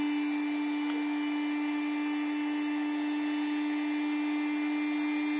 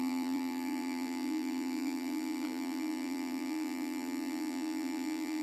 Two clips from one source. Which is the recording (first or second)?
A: first